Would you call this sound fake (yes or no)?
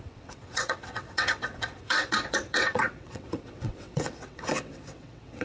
yes